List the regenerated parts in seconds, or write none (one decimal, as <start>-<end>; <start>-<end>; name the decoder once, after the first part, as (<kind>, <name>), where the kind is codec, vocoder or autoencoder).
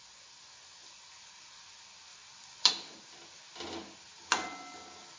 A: none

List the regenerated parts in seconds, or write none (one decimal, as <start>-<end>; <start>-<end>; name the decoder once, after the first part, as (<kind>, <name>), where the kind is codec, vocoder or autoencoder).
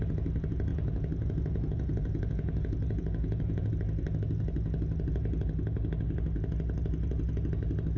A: 0.7-3.7 (vocoder, Vocos)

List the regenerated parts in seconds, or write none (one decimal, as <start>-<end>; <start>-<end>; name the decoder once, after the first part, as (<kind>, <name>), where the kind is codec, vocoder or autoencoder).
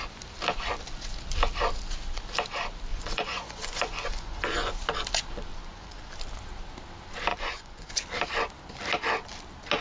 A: 2.9-4.7 (vocoder, Vocos); 5.5-6.1; 7.3-7.9